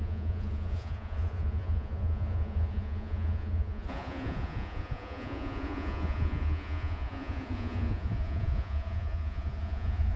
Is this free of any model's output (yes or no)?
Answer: no